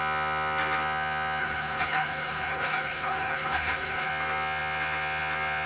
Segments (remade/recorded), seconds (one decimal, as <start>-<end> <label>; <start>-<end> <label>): 0.0-1.4 recorded; 1.4-4.1 remade; 4.1-5.7 recorded